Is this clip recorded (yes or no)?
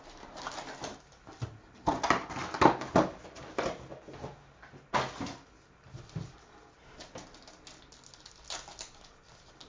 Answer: yes